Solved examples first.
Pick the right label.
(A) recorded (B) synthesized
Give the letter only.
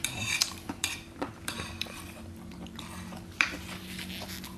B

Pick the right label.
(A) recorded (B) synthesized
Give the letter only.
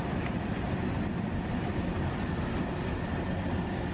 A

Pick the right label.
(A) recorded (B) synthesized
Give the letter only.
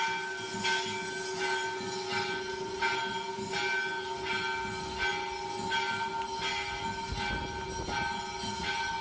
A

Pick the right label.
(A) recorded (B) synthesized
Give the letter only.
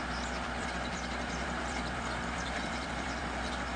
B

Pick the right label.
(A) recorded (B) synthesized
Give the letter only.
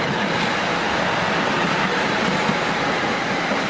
A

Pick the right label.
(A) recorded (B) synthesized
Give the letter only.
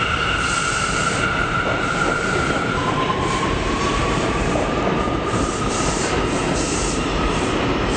B